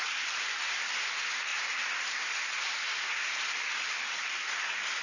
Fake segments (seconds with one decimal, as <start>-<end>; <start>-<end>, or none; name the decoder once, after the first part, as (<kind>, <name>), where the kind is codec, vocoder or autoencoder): none